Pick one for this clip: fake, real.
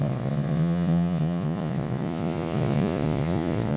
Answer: fake